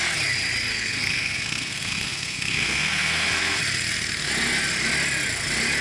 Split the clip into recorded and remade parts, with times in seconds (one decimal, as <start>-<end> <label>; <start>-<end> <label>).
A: 0.0-0.7 recorded; 0.7-3.6 remade; 3.6-5.8 recorded